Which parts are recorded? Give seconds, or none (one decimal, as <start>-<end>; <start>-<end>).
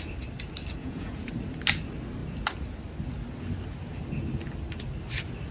0.0-0.8; 1.3-5.5